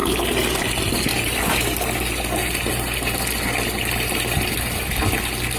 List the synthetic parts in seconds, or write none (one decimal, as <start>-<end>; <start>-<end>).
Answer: 0.0-0.6; 1.1-4.5